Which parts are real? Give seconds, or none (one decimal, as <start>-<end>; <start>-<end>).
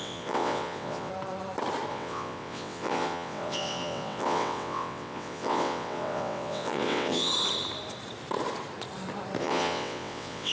1.1-1.9; 7.3-9.4